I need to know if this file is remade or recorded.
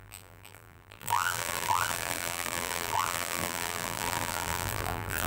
remade